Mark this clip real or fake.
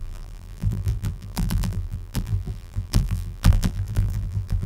fake